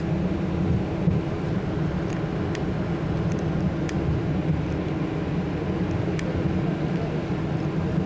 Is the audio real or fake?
real